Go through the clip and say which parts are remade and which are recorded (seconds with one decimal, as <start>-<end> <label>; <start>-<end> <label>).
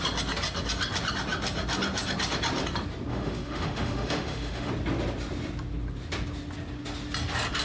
0.0-3.1 recorded; 3.1-4.7 remade; 4.7-7.6 recorded